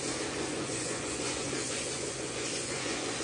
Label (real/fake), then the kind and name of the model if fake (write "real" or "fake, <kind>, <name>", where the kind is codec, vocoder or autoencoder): fake, vocoder, Vocos